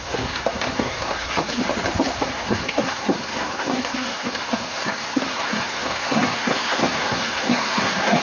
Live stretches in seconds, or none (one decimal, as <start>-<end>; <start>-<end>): 1.6-2.2